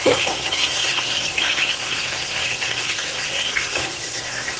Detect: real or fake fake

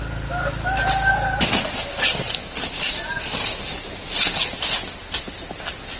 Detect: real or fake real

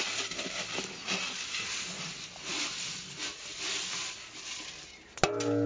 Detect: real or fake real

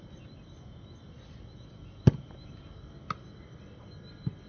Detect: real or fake real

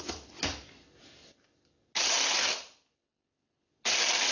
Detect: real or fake real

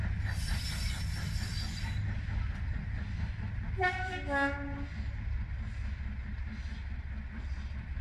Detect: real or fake real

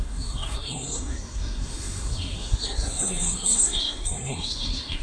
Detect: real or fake fake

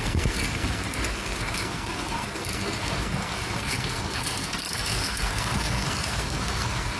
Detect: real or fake fake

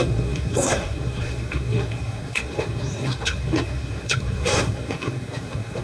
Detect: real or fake fake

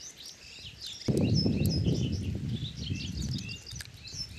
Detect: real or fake real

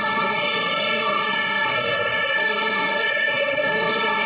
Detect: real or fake fake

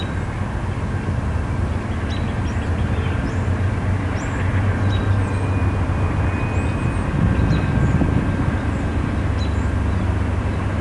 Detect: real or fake real